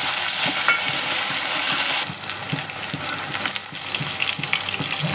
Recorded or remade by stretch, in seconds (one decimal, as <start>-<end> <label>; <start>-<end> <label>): 0.0-5.1 recorded